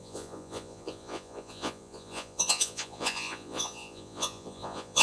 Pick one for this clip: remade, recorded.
remade